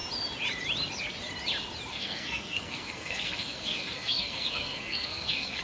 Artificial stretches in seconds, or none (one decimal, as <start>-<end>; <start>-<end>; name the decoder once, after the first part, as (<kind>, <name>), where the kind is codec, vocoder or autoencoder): 1.9-5.6 (codec, SNAC)